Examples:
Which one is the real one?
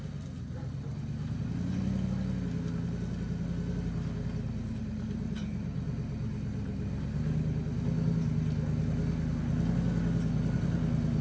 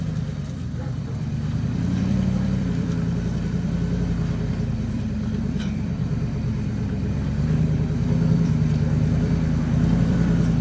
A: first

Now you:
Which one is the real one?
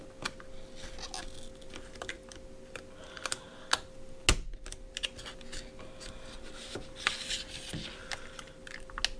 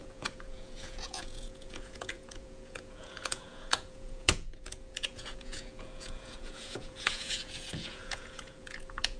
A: first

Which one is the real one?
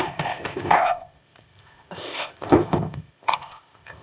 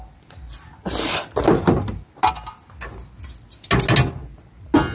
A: second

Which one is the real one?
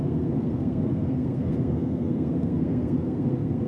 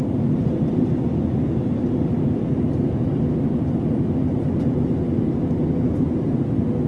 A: second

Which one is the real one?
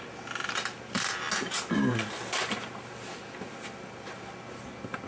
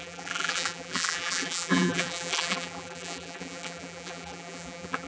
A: first